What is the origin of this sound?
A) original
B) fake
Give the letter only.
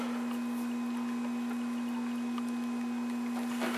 A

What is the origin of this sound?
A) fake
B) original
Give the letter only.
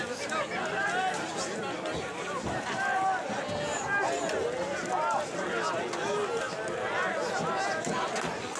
B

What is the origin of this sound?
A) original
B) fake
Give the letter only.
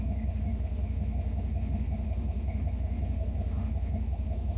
B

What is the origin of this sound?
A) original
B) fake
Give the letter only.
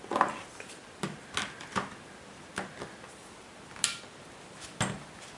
A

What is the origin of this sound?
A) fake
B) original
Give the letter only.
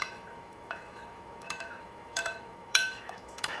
A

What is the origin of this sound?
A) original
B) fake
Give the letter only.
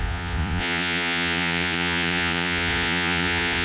B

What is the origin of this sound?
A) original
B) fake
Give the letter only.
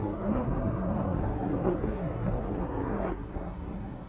B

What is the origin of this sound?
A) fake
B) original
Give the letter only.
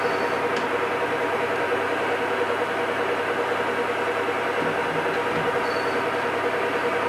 B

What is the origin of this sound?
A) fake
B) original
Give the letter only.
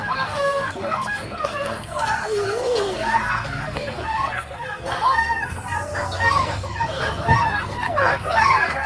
A